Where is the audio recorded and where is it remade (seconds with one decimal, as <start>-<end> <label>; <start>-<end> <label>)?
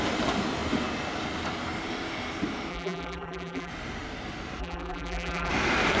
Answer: 0.0-2.7 recorded; 2.7-3.7 remade; 3.7-4.6 recorded; 4.6-5.5 remade; 5.5-6.0 recorded